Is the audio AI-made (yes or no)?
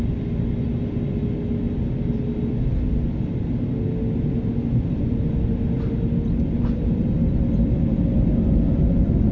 no